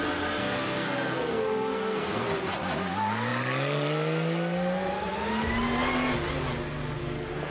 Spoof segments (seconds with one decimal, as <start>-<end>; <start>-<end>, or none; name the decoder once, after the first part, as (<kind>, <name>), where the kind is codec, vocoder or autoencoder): 0.4-2.2 (codec, SNAC)